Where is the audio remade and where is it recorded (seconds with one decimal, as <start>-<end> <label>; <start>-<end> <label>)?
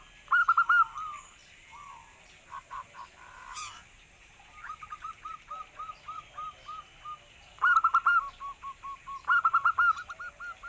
0.0-1.4 recorded; 1.4-4.8 remade; 4.8-10.7 recorded